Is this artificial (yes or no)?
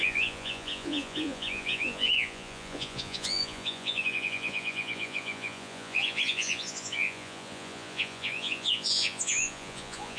yes